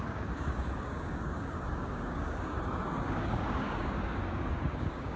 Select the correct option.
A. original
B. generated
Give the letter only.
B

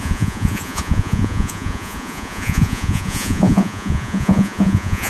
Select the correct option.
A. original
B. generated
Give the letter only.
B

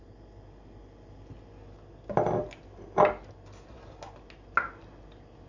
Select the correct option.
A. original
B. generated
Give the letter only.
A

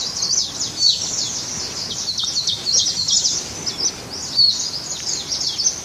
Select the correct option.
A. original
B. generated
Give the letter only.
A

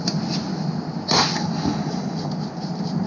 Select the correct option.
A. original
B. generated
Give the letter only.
A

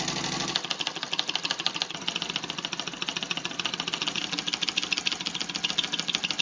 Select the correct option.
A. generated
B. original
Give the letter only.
B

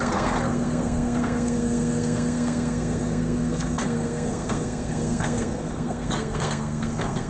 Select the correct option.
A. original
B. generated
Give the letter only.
B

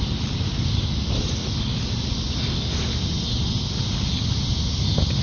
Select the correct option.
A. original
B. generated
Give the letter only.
A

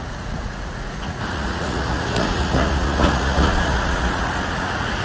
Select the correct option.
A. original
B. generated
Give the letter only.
B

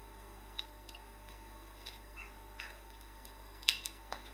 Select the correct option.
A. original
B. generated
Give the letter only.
B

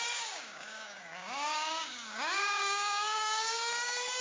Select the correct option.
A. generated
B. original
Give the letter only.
A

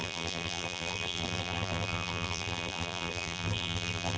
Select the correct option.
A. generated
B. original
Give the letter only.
A